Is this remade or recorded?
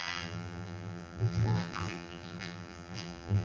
remade